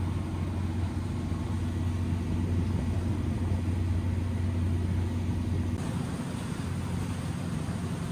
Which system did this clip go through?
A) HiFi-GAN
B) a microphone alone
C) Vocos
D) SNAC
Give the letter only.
B